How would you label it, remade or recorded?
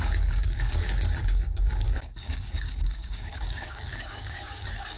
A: remade